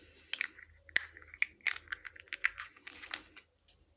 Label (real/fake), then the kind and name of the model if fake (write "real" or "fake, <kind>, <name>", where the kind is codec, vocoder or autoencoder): real